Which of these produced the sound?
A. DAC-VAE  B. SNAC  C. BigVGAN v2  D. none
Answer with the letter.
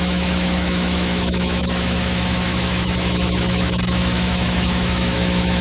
A